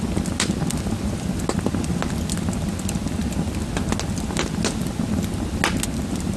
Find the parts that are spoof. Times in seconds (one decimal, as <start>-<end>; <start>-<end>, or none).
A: none

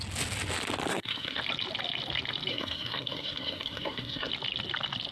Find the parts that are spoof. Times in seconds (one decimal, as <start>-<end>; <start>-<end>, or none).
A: 0.9-1.4; 2.5-4.3

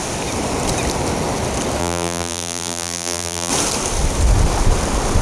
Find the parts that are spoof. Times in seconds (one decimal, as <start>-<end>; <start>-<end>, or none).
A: 1.8-3.5

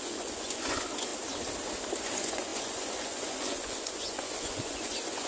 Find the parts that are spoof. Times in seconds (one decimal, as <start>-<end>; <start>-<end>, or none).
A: 0.0-1.1; 2.0-5.3

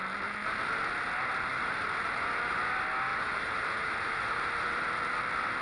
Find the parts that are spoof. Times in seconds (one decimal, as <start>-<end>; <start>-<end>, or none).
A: 1.5-2.6; 3.1-4.5

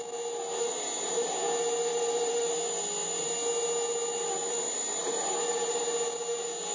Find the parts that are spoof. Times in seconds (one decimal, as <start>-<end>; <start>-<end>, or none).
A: 1.9-2.4; 5.0-5.8

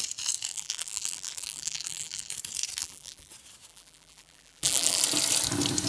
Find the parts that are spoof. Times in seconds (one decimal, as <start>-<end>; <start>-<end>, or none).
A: 0.5-2.3; 2.8-3.3; 3.7-5.0

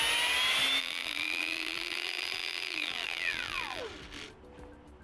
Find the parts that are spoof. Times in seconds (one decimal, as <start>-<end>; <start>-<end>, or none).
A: 0.8-3.8